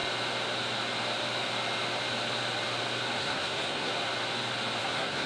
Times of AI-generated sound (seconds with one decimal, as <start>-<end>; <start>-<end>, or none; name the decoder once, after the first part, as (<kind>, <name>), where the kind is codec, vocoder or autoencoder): 3.2-3.9 (codec, SNAC); 4.8-5.3

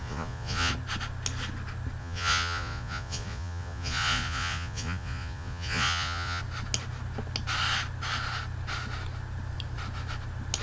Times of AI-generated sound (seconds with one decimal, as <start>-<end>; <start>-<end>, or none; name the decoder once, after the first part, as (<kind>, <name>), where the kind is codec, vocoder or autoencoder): 0.0-0.7 (vocoder, Vocos); 2.0-6.4

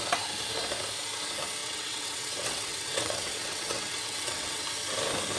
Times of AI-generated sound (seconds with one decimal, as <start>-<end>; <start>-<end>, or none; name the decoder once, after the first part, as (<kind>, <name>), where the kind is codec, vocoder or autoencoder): 1.6-4.6 (vocoder, WaveNeXt)

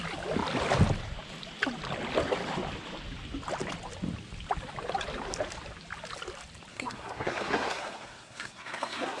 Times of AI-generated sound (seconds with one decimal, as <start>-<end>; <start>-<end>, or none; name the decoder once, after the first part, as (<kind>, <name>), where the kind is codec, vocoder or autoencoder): 6.7-9.2 (codec, SNAC)